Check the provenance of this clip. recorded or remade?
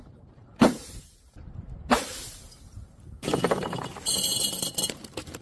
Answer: remade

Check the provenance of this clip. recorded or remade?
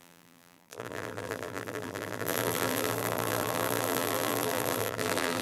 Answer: remade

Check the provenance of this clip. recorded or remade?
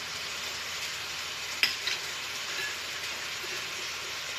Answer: recorded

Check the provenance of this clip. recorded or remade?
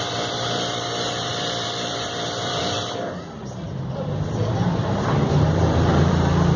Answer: remade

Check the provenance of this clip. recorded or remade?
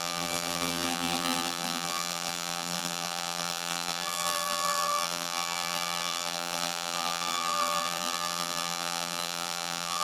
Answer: remade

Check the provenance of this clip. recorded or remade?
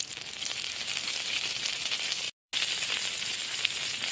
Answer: remade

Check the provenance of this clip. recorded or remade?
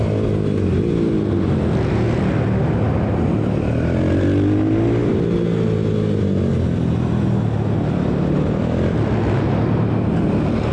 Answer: recorded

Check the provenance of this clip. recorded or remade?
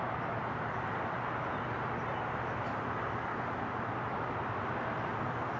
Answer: recorded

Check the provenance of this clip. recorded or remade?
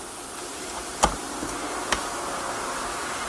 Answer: recorded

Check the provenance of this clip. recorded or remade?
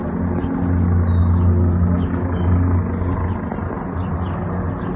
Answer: recorded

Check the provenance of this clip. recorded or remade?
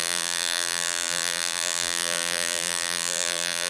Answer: remade